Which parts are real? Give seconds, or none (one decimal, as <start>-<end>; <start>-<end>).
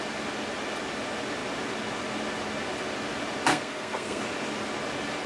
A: 0.0-3.5; 4.2-5.3